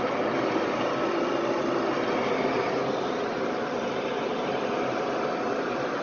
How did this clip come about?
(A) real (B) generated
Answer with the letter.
B